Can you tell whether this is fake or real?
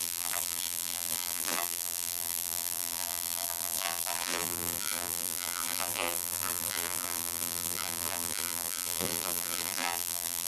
fake